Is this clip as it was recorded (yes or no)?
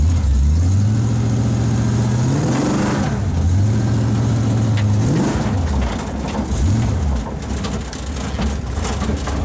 yes